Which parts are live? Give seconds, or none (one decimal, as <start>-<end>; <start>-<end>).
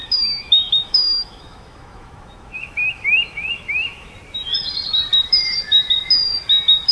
4.1-6.9